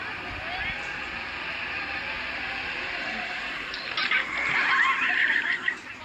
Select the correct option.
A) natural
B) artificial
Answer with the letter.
A